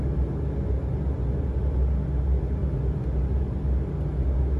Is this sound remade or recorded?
recorded